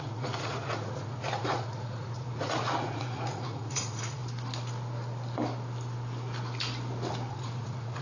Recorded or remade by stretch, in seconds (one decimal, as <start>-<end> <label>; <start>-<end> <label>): 0.0-4.2 remade; 4.2-7.3 recorded; 7.3-8.0 remade